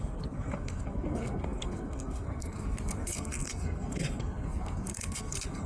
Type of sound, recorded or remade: remade